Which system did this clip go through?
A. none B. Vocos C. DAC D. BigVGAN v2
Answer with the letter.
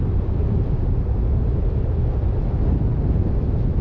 A